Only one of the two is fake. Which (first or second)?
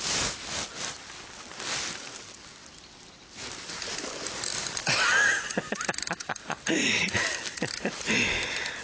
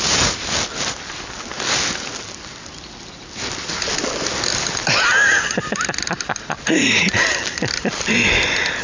first